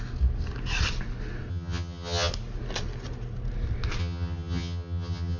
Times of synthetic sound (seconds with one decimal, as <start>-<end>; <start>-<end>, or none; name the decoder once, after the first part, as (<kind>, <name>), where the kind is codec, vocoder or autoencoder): 1.5-2.3 (vocoder, HiFi-GAN); 4.0-5.4